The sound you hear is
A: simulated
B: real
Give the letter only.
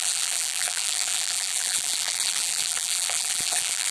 A